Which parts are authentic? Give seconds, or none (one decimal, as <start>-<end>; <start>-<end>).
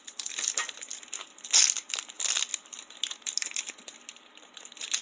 0.0-5.0